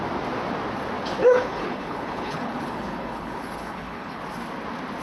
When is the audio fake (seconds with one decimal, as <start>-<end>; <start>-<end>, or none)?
1.2-4.2